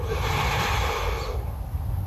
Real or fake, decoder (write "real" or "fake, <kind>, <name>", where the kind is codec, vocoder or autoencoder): real